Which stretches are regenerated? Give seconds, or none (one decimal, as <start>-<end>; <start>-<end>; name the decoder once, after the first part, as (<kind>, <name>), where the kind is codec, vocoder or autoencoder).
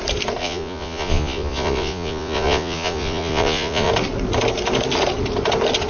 0.4-3.9 (vocoder, Vocos)